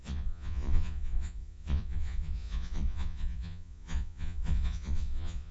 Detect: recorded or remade remade